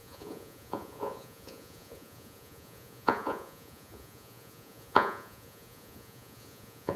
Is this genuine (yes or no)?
no